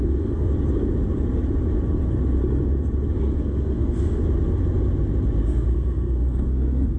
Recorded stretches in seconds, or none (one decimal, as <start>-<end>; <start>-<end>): 0.5-3.4; 4.2-5.4